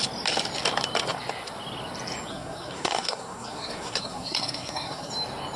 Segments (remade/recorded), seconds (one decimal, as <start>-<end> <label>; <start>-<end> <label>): 0.0-2.3 recorded; 2.3-5.1 remade; 5.1-5.6 recorded